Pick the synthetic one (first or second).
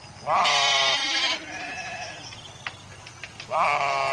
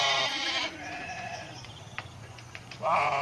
second